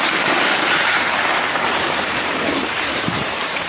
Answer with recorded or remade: remade